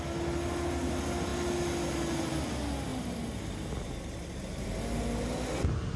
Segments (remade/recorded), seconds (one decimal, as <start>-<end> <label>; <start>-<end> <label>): 0.0-6.0 recorded